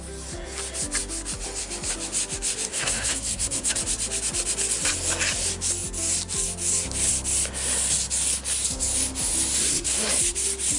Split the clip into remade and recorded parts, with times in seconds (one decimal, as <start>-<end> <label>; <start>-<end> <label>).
0.0-2.7 recorded; 2.7-3.8 remade; 3.8-9.6 recorded; 9.6-10.1 remade; 10.1-10.8 recorded